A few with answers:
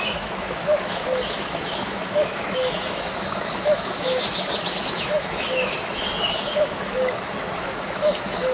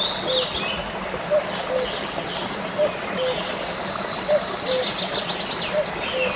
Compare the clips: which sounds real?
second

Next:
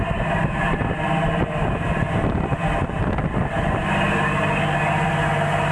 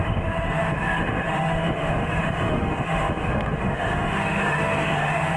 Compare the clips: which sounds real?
first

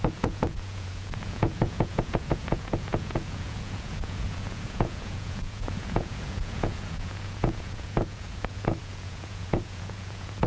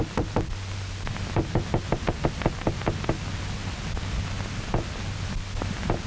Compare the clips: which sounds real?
second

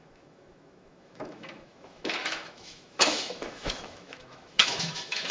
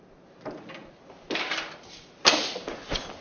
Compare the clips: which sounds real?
second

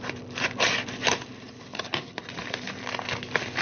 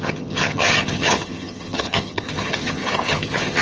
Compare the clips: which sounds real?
first